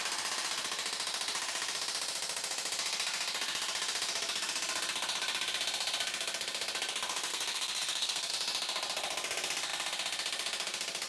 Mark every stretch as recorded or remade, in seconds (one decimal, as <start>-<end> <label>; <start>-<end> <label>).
0.0-7.3 recorded; 7.3-8.3 remade; 8.3-11.1 recorded